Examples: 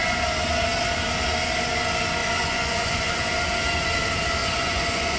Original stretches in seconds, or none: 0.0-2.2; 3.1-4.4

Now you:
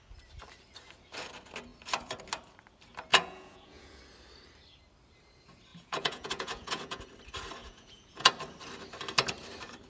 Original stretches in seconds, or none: 0.0-3.1; 4.0-5.7; 7.0-7.6; 8.3-9.9

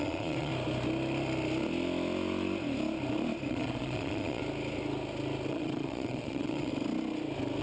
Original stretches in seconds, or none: 0.5-3.5; 4.4-5.5; 6.7-7.6

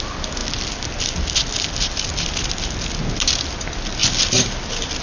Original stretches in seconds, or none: 0.0-5.0